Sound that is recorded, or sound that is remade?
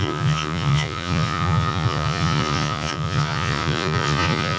remade